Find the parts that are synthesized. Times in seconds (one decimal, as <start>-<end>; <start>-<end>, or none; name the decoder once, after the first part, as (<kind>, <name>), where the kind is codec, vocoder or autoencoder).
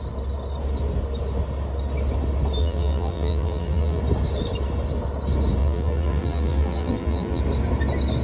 2.6-4.0 (vocoder, BigVGAN v2); 5.6-7.4